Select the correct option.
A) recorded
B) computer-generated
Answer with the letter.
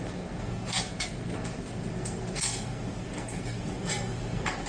B